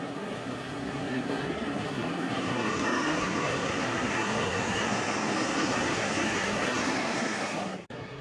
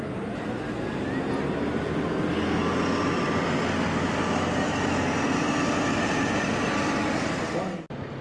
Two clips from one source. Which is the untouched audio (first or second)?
second